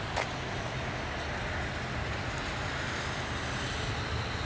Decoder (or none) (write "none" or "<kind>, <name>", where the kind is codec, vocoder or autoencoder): none